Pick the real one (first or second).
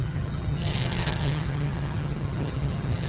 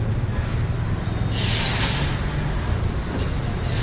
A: second